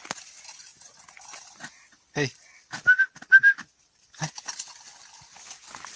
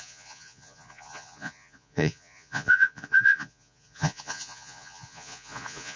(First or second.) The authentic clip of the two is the first